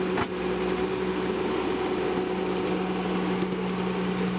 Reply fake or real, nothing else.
real